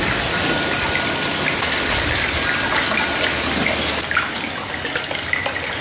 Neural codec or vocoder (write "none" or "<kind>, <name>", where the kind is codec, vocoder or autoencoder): none